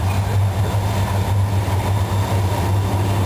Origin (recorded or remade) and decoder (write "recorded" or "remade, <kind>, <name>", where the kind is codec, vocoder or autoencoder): recorded